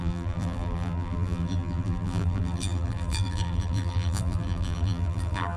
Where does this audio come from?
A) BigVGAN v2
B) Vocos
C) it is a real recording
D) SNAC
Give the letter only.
A